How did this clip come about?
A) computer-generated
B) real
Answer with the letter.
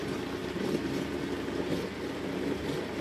B